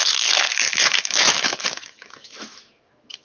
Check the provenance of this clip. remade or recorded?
remade